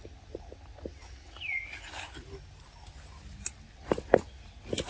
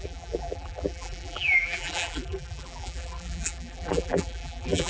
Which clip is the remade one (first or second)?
second